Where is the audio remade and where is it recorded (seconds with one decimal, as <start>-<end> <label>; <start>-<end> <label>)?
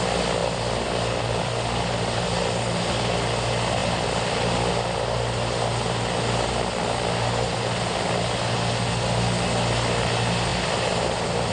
0.0-11.5 recorded